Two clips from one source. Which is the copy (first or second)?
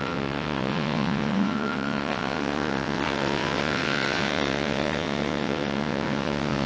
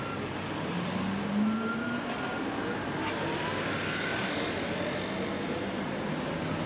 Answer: first